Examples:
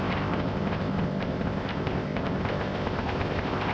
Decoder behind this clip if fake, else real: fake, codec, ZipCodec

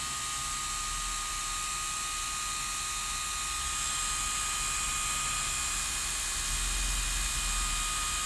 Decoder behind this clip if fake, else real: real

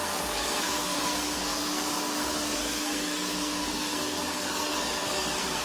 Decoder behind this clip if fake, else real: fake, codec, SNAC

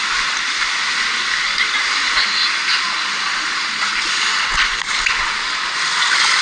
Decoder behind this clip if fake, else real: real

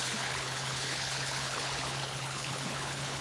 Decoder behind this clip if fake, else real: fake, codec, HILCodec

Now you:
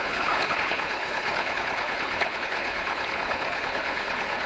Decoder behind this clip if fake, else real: fake, codec, HILCodec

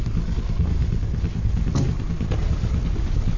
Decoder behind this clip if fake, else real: real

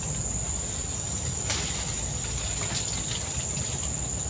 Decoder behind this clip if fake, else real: real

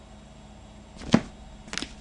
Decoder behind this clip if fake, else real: real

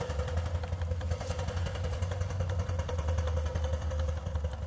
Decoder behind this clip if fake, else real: real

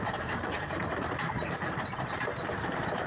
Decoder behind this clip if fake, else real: fake, vocoder, BigVGAN v2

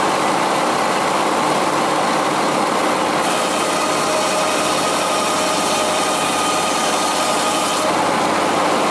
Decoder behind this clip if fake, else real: real